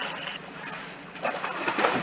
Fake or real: real